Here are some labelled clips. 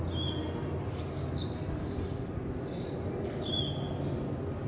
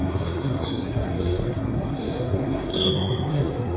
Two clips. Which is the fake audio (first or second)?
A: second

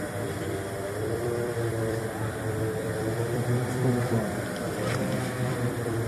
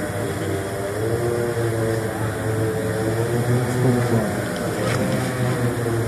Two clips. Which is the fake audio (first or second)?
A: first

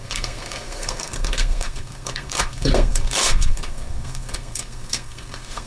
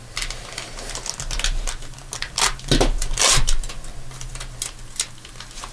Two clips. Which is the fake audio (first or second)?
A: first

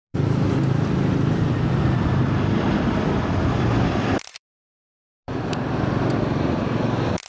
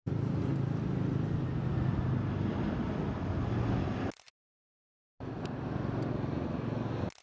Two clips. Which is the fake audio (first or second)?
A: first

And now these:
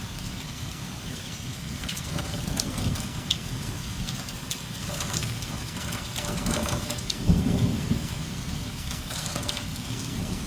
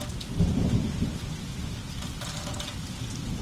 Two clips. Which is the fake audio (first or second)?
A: first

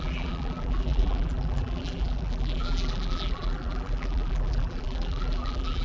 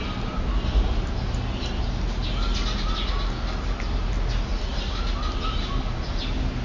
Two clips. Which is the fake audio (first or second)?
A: first